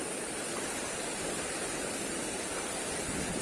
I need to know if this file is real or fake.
fake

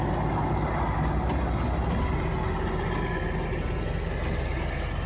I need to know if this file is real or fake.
real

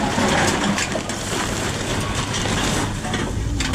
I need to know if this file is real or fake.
real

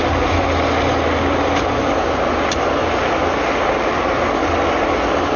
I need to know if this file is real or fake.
real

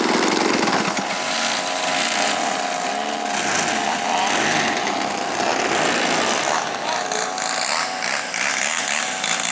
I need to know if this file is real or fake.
real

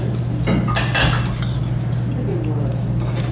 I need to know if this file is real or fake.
real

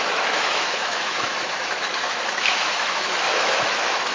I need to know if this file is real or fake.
fake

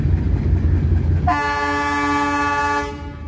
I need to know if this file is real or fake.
real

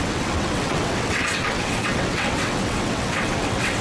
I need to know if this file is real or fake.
fake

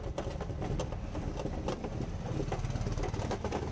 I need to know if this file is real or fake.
real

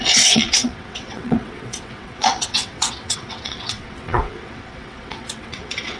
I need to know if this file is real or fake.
fake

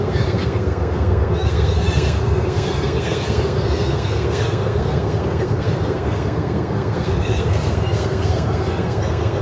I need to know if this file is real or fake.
fake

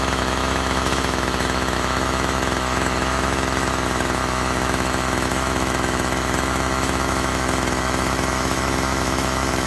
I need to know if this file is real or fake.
fake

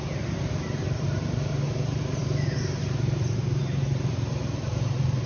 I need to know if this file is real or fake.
fake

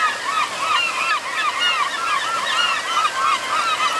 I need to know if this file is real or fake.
real